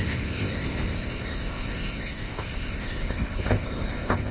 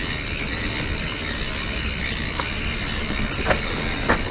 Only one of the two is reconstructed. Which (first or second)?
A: first